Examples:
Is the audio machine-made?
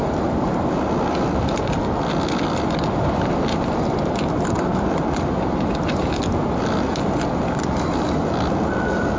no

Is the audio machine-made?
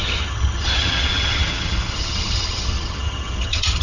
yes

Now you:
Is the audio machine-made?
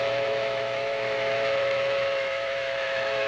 yes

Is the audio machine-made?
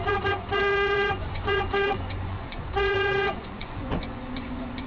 yes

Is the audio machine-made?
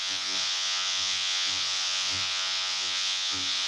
yes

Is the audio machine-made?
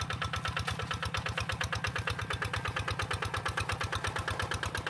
no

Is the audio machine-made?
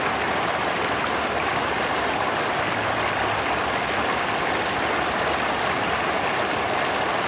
no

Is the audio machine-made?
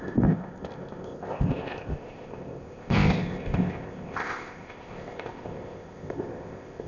yes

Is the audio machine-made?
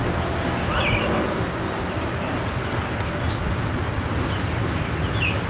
no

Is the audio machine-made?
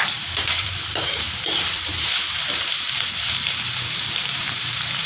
yes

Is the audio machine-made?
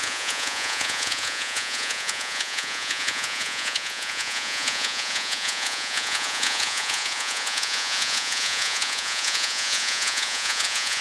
yes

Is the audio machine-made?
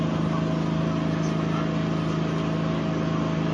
no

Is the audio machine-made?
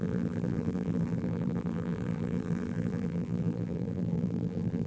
yes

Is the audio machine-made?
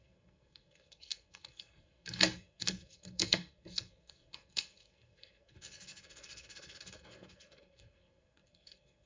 yes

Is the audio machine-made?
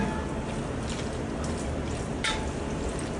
no